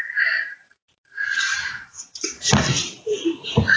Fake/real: fake